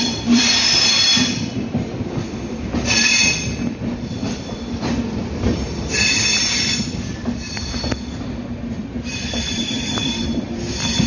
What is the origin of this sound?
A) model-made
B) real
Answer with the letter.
A